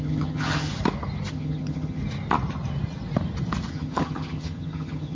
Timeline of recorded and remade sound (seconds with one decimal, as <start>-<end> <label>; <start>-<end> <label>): 0.0-0.7 remade; 0.7-1.3 recorded; 1.3-2.0 remade; 2.0-3.7 recorded; 3.7-5.2 remade